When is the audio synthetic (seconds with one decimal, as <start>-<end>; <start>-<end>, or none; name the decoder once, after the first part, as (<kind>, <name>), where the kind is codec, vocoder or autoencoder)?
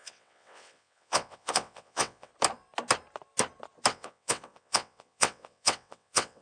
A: 0.0-2.3 (vocoder, WaveNeXt); 3.9-6.4